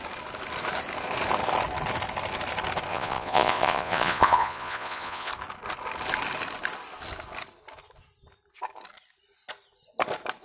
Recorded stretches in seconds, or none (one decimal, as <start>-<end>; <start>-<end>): 0.0-2.9; 5.3-10.4